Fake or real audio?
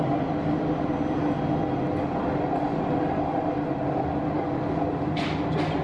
real